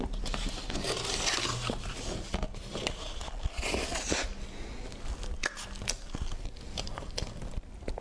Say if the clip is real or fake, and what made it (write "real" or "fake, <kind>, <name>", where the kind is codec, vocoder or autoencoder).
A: real